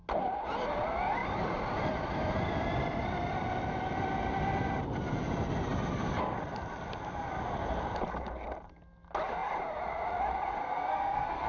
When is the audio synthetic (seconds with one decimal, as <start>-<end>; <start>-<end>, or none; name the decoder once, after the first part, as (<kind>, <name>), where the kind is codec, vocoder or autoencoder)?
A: 10.6-11.5 (codec, SNAC)